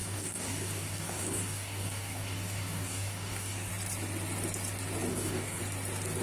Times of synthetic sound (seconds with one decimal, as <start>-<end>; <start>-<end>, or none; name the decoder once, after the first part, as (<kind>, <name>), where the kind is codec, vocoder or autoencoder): 0.0-3.7 (codec, DAC); 5.1-5.6